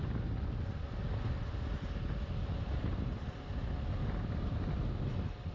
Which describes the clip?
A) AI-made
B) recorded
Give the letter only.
B